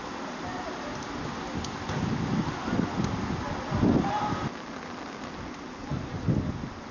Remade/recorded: recorded